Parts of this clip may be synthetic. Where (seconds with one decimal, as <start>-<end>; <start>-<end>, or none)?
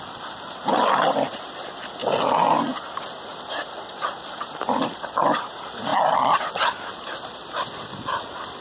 0.0-2.0; 3.0-8.6